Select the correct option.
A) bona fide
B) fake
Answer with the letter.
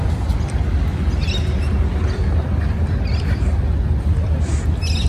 A